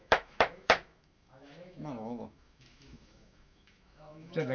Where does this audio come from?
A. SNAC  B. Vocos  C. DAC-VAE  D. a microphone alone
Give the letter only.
C